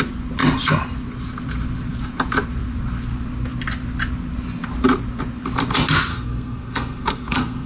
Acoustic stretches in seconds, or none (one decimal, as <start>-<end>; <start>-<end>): 0.0-6.1